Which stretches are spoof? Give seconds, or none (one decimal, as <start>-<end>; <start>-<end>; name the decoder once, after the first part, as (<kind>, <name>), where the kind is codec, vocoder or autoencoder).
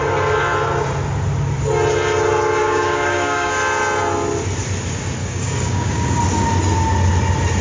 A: 2.6-3.5 (codec, DAC); 5.2-6.2